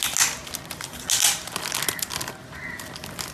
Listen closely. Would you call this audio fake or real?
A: real